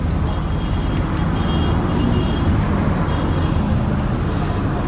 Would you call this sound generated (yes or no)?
no